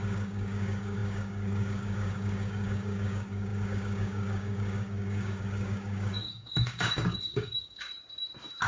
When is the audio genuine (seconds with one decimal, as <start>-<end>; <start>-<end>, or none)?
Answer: 7.9-8.7